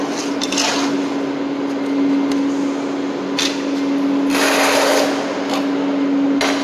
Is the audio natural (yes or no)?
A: yes